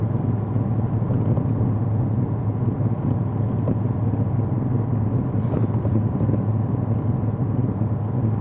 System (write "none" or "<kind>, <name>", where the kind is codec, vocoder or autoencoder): none